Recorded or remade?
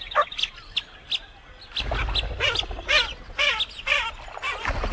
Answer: recorded